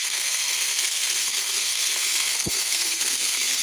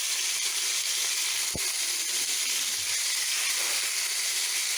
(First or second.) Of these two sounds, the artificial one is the first